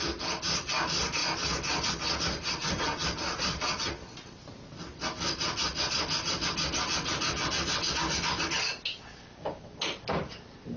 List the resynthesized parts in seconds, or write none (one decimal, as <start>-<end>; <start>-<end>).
8.9-9.8